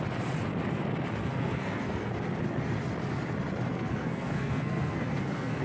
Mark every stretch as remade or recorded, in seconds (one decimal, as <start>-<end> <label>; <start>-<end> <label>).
0.0-1.2 recorded; 1.2-2.1 remade; 2.1-3.7 recorded; 3.7-5.6 remade